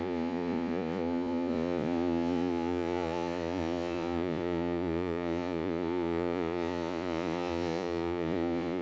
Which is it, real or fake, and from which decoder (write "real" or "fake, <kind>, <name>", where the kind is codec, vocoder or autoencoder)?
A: fake, vocoder, Vocos